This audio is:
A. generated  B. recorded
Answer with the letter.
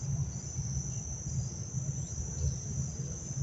B